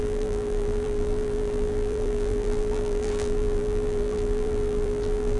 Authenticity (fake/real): fake